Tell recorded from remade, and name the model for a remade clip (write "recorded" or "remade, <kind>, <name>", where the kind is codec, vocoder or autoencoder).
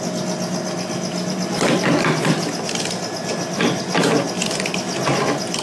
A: recorded